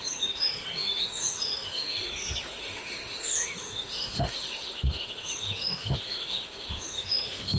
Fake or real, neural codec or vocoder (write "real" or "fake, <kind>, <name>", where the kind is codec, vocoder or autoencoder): fake, autoencoder, DAC-VAE